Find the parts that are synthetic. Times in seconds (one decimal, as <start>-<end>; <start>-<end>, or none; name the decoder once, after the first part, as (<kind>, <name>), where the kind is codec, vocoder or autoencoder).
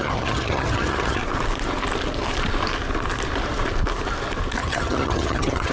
0.0-1.2 (vocoder, HiFi-GAN); 4.6-5.7